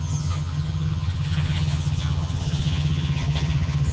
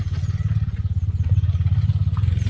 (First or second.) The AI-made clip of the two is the first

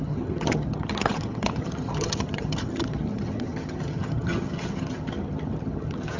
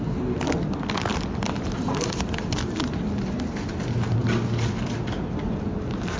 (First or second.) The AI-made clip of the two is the first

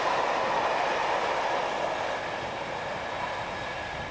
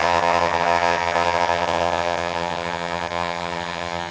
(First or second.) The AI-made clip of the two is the second